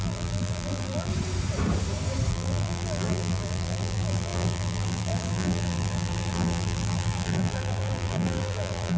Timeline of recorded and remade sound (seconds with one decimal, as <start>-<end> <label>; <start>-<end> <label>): 0.0-1.1 remade; 1.1-2.3 recorded; 2.3-9.0 remade